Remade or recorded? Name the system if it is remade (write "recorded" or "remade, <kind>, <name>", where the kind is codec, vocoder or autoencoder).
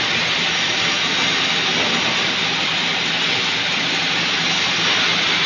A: recorded